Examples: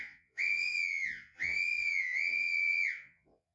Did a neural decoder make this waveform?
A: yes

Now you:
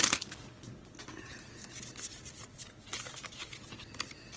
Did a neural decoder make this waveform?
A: no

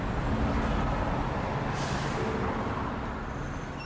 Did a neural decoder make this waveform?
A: no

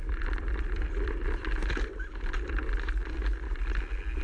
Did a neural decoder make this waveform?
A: no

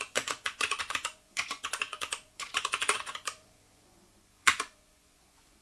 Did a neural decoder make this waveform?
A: yes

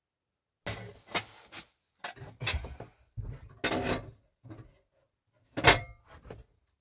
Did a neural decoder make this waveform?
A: no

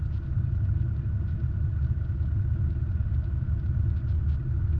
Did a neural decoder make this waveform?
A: no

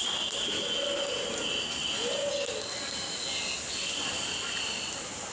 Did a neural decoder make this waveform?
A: no